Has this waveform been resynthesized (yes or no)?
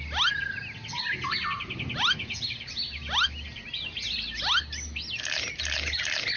no